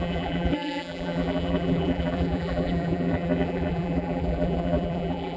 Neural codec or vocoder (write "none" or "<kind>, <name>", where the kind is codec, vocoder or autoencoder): vocoder, BigVGAN v2